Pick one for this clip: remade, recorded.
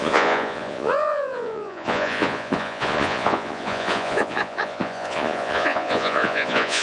remade